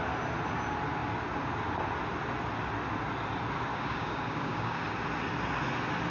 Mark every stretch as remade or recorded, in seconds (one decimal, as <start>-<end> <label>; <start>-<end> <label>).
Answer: 0.0-3.7 recorded; 3.7-4.8 remade; 4.8-6.1 recorded